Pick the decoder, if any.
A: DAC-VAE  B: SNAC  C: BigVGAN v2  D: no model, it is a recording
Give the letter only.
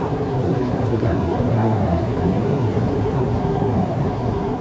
B